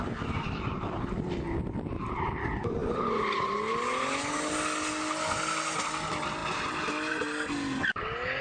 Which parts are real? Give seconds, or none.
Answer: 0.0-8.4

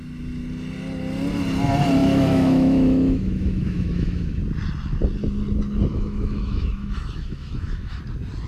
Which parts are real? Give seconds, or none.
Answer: 0.0-2.0; 4.4-5.9; 8.0-8.5

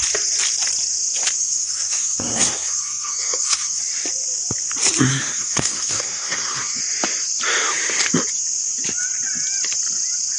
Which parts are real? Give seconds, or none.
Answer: 0.0-1.4; 3.8-5.1; 6.8-10.4

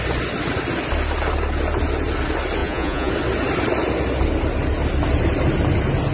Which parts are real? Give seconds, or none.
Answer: 0.0-2.6; 3.1-6.1

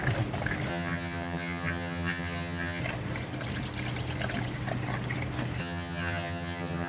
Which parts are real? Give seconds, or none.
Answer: 0.0-0.7; 2.8-5.6

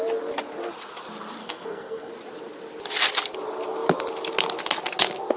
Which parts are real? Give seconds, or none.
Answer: 0.0-1.4; 2.1-5.4

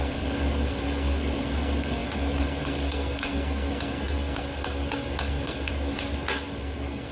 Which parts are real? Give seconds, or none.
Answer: none